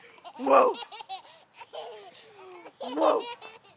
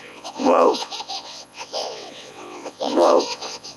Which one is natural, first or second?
first